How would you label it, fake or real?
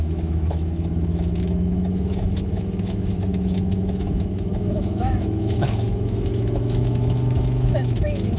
fake